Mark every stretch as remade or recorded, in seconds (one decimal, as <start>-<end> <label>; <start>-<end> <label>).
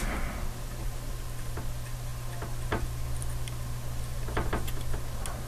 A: 0.0-5.5 recorded